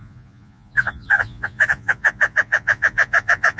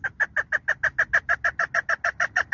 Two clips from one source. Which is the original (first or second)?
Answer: second